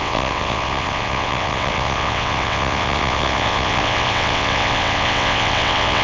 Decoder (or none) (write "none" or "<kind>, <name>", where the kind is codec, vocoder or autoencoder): vocoder, WaveNeXt